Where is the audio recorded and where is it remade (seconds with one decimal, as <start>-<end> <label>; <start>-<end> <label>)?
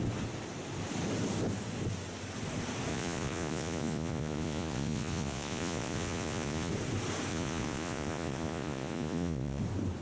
0.0-2.9 recorded; 2.9-6.7 remade; 6.7-7.3 recorded; 7.3-9.6 remade; 9.6-10.0 recorded